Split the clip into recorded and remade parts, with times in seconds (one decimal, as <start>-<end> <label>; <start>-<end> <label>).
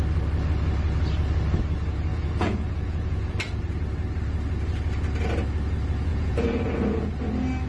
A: 0.0-2.1 recorded; 2.1-3.6 remade; 3.6-6.1 recorded; 6.1-7.1 remade; 7.1-7.7 recorded